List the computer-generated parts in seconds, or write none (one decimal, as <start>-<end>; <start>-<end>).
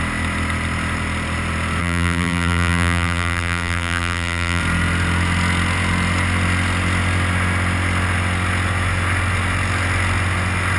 1.8-4.6